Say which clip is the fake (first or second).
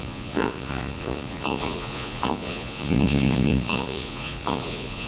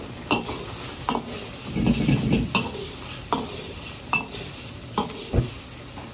first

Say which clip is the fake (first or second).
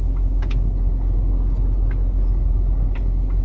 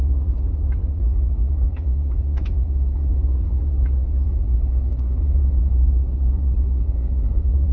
second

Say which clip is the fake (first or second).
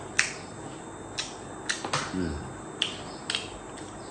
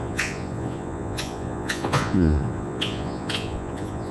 second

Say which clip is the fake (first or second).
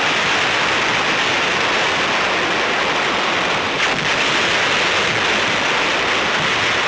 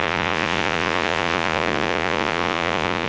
second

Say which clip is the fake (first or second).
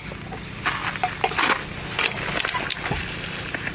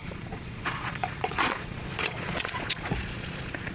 second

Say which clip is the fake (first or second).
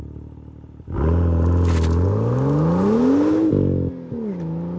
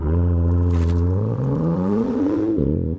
second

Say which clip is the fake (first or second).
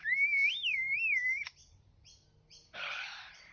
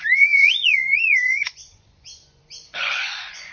second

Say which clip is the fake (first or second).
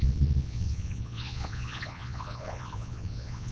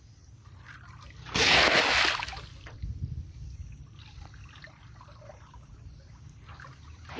first